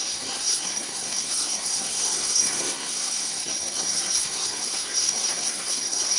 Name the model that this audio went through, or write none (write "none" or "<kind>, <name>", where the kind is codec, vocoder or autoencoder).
codec, SNAC